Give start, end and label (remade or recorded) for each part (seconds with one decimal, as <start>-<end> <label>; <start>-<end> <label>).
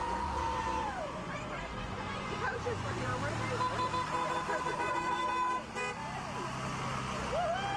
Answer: 0.0-3.1 remade; 3.1-4.7 recorded; 4.7-5.2 remade; 5.2-7.8 recorded